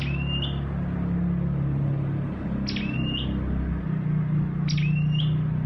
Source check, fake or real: real